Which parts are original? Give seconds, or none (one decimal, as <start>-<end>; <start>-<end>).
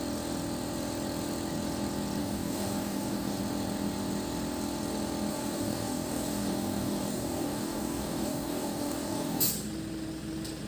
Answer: 0.0-2.2; 3.4-5.3; 9.5-10.7